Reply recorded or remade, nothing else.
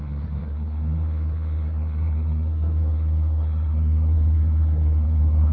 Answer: remade